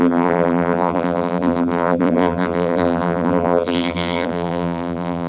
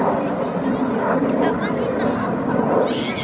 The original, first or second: second